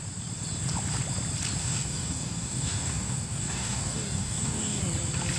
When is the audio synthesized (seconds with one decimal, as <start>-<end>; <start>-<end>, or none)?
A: 1.6-4.8